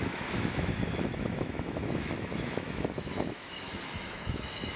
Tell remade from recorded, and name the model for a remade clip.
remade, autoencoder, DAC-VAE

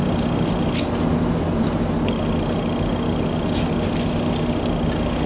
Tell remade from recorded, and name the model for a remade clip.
recorded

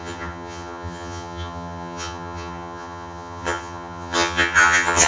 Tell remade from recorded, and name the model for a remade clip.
remade, vocoder, HiFi-GAN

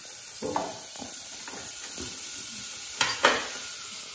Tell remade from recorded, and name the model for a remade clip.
recorded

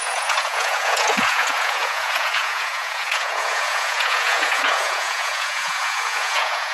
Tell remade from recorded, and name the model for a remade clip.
remade, vocoder, Vocos